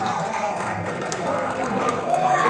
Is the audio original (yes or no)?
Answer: no